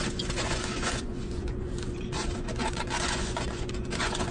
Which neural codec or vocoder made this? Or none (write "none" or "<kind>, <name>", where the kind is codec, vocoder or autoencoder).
vocoder, Vocos